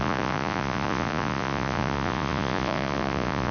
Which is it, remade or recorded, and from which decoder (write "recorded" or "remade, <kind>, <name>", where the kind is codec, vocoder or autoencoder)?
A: remade, vocoder, Vocos